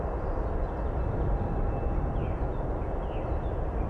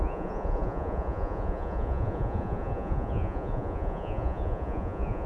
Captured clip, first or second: first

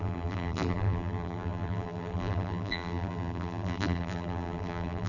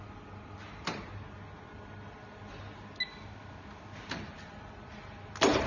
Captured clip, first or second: second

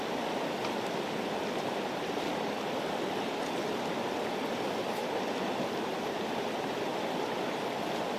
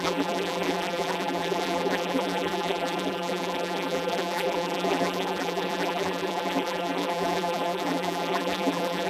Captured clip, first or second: first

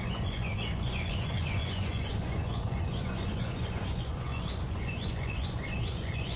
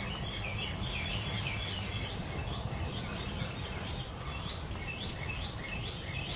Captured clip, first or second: second